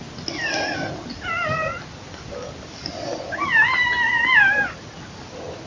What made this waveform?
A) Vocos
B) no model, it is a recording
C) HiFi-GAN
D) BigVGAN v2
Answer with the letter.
B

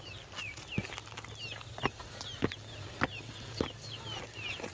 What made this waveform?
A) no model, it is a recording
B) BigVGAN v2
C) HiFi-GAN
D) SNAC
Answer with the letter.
A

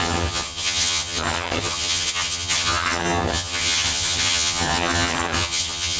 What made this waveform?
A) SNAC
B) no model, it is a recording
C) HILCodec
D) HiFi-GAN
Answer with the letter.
D